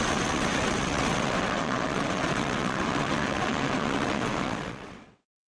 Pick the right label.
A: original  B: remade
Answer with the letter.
B